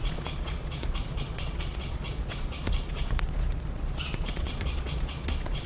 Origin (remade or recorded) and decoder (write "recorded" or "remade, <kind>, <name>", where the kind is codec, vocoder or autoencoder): remade, vocoder, Vocos